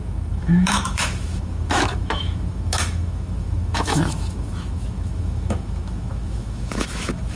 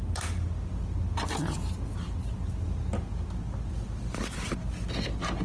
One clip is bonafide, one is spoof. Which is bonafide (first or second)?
second